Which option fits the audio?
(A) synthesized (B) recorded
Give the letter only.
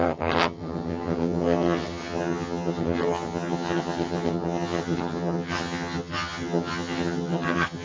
A